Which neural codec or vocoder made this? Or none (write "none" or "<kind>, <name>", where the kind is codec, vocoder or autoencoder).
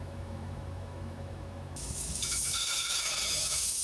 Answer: autoencoder, DAC-VAE